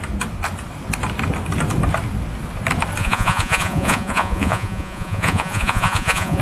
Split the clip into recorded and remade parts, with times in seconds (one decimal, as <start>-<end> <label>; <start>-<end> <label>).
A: 0.0-3.0 recorded; 3.0-6.4 remade